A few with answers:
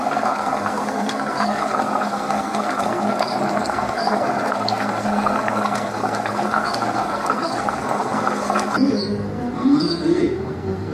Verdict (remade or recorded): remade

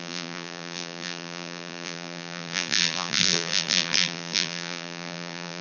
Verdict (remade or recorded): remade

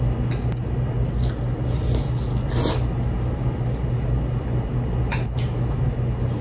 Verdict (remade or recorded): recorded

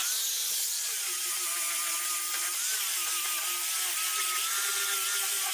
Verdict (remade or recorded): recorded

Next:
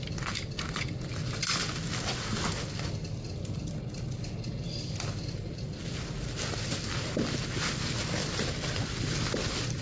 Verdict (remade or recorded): recorded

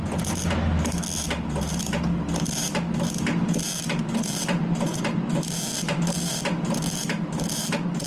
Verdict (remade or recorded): recorded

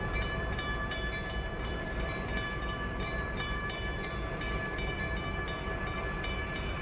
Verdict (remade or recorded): remade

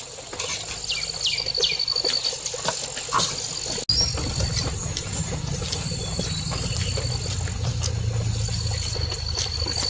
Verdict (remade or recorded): recorded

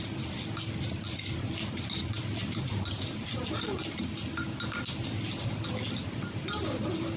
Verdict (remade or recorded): recorded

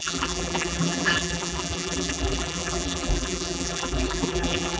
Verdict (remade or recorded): remade